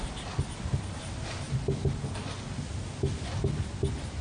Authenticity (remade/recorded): recorded